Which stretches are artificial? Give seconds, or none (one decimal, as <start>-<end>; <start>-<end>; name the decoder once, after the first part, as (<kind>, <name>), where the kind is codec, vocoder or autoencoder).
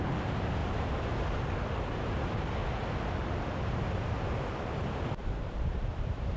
0.0-2.6 (vocoder, BigVGAN v2); 3.6-6.4